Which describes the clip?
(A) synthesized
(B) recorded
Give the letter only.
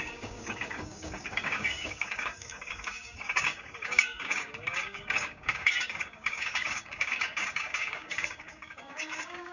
A